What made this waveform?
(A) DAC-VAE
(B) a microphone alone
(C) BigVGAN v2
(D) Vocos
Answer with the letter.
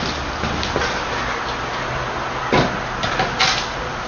B